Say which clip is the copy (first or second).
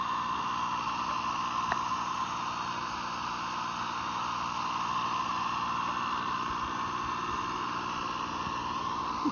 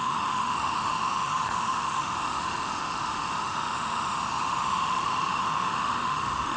second